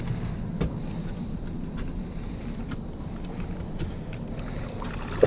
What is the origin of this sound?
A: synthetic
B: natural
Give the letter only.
B